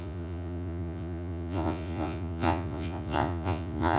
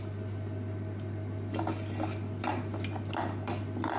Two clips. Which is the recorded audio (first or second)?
second